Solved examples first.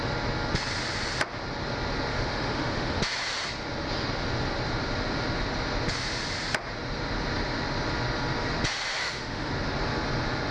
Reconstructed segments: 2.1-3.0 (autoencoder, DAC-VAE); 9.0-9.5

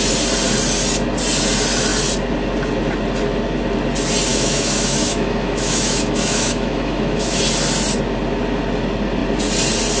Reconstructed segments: 4.3-7.4 (autoencoder, DAC-VAE)

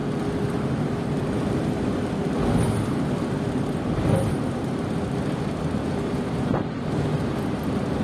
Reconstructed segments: none

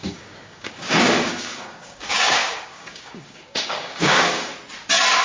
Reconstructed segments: 0.0-4.5 (codec, DAC)

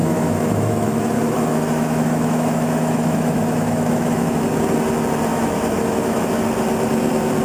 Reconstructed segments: 0.0-4.4 (autoencoder, DAC-VAE); 5.3-6.3